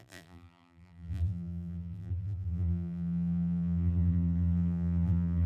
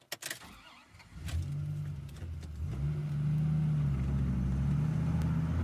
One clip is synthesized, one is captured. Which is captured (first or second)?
second